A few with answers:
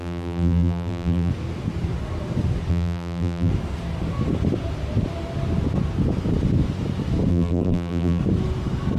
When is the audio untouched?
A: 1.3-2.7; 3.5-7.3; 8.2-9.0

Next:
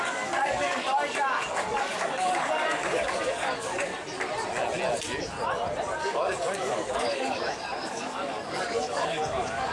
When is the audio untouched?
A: 3.9-6.0

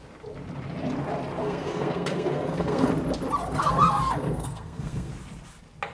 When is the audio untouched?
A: 0.0-1.4; 2.9-3.6; 5.1-5.9

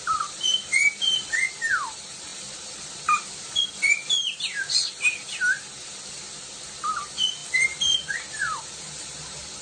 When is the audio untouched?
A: 0.0-9.6

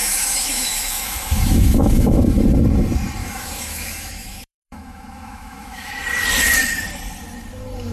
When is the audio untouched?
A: 2.4-3.2; 5.9-7.9

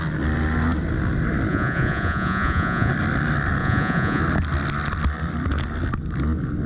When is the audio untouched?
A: 0.0-1.5; 2.9-3.6; 4.2-6.7

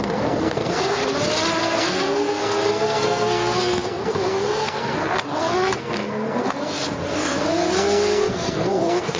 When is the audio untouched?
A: 1.0-1.6

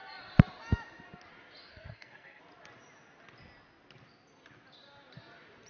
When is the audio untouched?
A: 0.0-1.7; 2.4-5.7